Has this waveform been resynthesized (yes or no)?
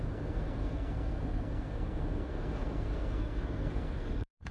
yes